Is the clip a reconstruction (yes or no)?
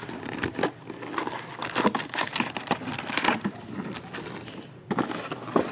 no